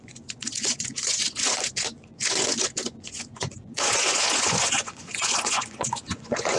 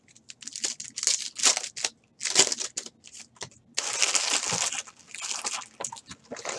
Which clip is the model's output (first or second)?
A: first